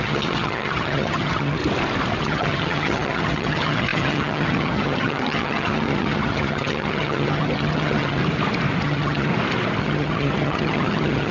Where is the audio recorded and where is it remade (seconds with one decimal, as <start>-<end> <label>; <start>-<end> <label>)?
0.0-1.6 remade; 1.6-2.2 recorded; 2.2-8.2 remade; 8.2-8.8 recorded; 8.8-9.3 remade; 9.3-9.8 recorded; 9.8-11.3 remade